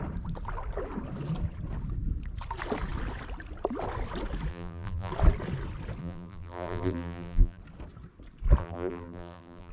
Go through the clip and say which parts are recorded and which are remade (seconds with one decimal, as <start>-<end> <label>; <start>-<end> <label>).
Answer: 0.0-4.5 recorded; 4.5-5.1 remade; 5.1-6.0 recorded; 6.0-7.6 remade; 7.6-8.6 recorded; 8.6-9.7 remade